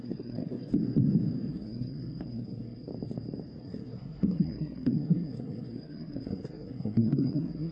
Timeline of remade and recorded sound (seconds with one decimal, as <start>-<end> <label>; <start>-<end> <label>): 0.0-0.7 remade; 0.7-1.5 recorded; 1.5-2.9 remade; 2.9-3.6 recorded; 3.6-7.7 remade